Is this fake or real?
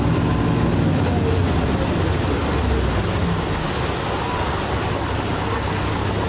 real